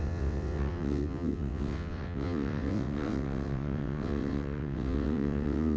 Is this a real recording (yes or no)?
no